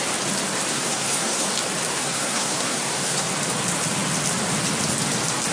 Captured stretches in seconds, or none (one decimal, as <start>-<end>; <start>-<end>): 0.0-0.7; 1.5-1.9; 3.3-5.5